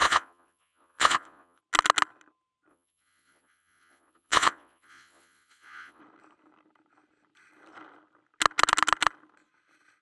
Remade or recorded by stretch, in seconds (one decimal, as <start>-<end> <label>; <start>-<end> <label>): 0.0-1.6 remade; 1.6-2.7 recorded; 2.7-6.0 remade; 6.0-10.0 recorded